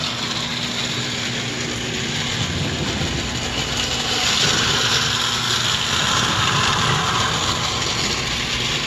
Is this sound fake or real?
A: real